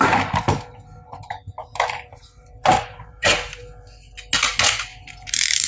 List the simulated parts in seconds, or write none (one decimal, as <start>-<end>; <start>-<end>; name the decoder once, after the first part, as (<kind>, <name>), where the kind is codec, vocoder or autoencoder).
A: 1.6-3.6 (vocoder, BigVGAN v2); 4.9-5.7